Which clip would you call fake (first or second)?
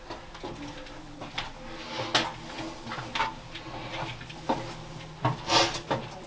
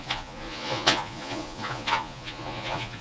second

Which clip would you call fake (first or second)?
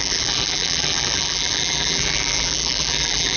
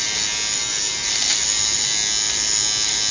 first